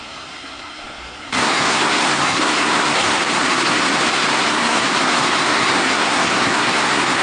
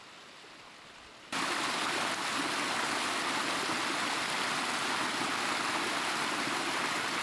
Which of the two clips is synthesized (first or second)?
first